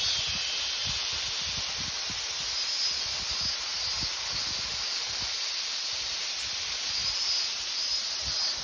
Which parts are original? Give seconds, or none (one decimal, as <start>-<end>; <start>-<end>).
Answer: 0.0-8.6